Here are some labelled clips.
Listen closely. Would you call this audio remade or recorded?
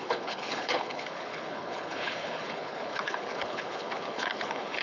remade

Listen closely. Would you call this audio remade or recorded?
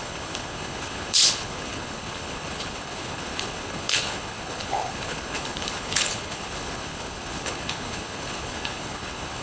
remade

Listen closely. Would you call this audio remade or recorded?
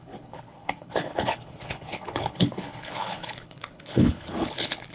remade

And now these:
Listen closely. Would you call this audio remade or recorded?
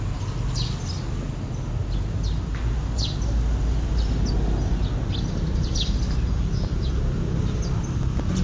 recorded